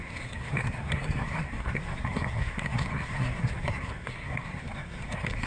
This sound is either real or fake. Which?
fake